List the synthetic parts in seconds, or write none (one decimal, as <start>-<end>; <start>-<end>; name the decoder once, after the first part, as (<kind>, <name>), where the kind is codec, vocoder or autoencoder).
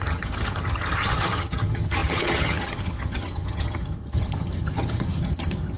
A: 0.0-5.8 (vocoder, HiFi-GAN)